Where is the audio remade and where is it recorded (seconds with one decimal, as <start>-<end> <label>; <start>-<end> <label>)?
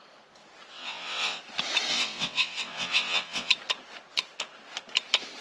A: 0.0-0.7 recorded; 0.7-1.4 remade; 1.4-1.9 recorded; 1.9-3.5 remade; 3.5-5.4 recorded